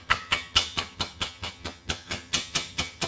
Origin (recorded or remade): remade